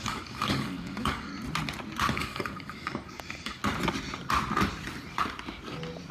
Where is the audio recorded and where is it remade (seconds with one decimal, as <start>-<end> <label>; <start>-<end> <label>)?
0.0-1.3 remade; 1.3-2.1 recorded; 2.1-3.6 remade; 3.6-6.1 recorded

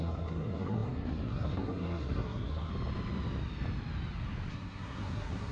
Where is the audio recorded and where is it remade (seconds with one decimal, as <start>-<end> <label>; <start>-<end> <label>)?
0.0-2.7 remade; 2.7-4.5 recorded; 4.5-5.5 remade

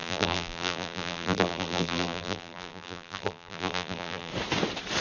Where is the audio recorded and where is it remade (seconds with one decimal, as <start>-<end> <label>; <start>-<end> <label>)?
0.0-4.3 remade; 4.3-5.0 recorded

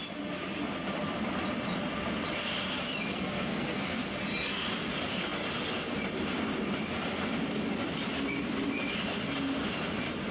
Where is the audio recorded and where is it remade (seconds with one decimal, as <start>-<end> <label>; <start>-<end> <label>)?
0.0-3.1 recorded; 3.1-4.1 remade; 4.1-10.3 recorded

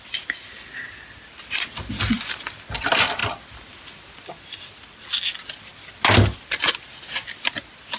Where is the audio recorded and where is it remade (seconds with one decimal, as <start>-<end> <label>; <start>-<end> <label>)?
0.0-8.0 recorded

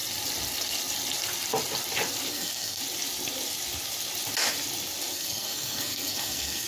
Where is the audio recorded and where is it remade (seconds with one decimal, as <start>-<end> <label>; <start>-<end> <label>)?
0.0-2.3 recorded; 2.3-2.8 remade; 2.8-5.1 recorded; 5.1-6.7 remade

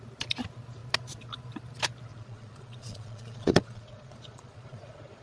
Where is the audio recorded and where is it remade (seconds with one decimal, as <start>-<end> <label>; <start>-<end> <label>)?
0.0-2.1 recorded; 2.1-5.2 remade